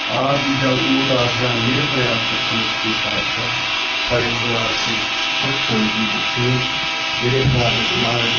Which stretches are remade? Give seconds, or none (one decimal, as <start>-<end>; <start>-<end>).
0.0-0.6; 1.3-5.2; 7.7-8.4